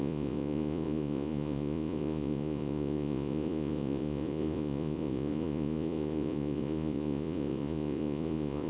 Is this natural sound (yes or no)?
no